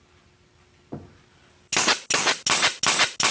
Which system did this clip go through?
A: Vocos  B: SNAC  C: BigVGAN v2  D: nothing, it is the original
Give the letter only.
D